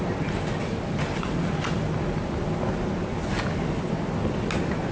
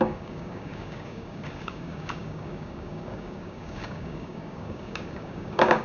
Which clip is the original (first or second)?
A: first